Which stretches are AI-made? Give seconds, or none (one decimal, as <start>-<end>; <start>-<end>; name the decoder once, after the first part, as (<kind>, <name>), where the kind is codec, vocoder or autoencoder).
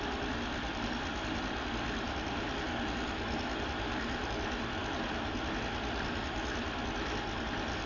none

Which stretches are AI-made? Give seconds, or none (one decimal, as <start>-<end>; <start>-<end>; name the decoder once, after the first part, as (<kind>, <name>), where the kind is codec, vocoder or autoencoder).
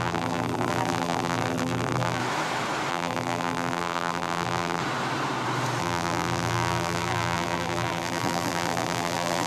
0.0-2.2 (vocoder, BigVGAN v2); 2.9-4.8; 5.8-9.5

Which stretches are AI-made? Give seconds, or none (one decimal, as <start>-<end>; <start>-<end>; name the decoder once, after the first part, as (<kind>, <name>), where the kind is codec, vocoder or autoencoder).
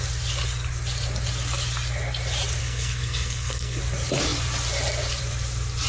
2.6-3.8 (codec, SNAC)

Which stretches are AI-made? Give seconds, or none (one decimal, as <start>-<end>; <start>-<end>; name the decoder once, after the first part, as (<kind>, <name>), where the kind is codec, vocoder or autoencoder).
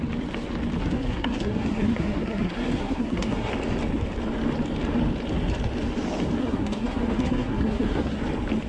0.8-3.5 (codec, SNAC); 6.4-8.2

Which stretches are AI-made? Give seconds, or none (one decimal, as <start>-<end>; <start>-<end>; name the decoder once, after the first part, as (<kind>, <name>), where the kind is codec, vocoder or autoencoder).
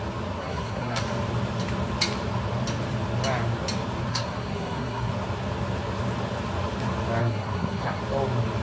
0.4-1.0 (codec, SNAC); 4.1-5.1; 7.2-8.0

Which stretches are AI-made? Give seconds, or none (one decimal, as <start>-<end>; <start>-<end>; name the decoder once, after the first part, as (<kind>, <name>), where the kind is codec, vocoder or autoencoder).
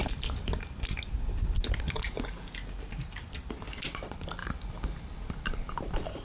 2.9-4.4 (vocoder, BigVGAN v2); 5.8-6.2